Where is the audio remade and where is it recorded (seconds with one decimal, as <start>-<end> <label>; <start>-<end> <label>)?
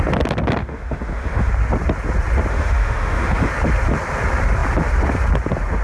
0.0-0.6 recorded; 0.6-1.5 remade; 1.5-2.5 recorded; 2.5-3.5 remade; 3.5-5.8 recorded